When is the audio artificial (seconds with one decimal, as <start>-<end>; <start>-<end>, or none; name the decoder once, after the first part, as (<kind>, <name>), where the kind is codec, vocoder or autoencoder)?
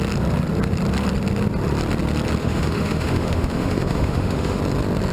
2.4-4.6 (autoencoder, DAC-VAE)